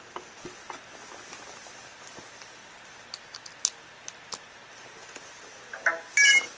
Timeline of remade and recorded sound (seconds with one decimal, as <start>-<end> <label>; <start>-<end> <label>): 0.0-6.6 recorded